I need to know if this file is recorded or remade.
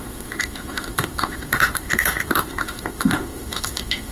remade